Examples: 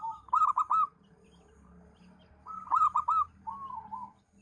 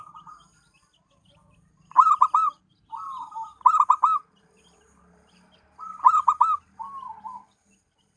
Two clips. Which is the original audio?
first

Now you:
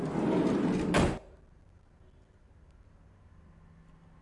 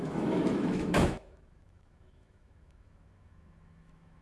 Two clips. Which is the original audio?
first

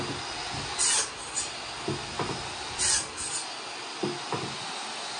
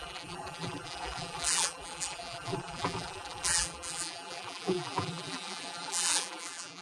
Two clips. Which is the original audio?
first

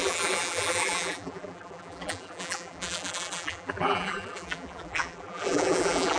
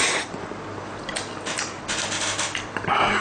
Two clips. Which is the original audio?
second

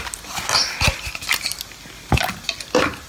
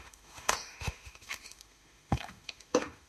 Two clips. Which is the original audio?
first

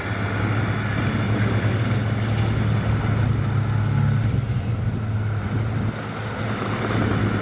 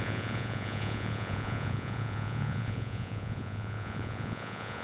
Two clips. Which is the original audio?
first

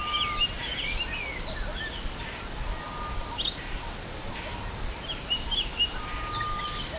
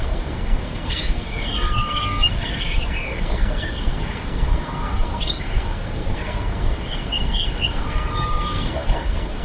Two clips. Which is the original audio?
first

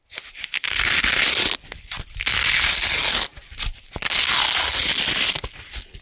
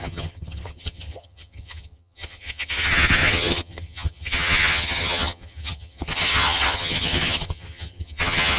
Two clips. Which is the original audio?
first